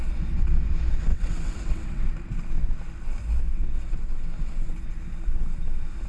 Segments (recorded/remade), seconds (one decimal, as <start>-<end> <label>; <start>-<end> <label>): 0.0-1.1 recorded; 1.1-2.1 remade; 2.1-6.1 recorded